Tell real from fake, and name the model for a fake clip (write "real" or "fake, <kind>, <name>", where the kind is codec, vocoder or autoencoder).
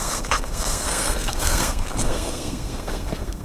fake, codec, SNAC